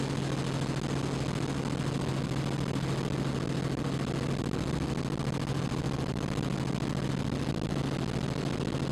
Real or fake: real